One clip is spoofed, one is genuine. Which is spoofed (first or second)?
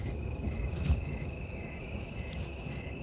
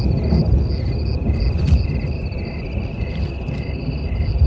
first